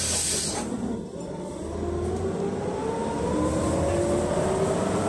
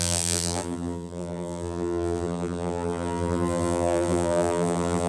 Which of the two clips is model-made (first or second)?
second